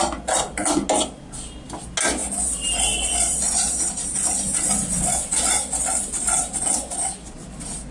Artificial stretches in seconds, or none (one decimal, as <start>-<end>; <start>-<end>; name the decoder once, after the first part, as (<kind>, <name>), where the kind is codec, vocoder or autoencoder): none